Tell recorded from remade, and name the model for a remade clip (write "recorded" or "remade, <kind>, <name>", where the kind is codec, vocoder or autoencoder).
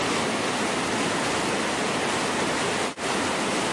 recorded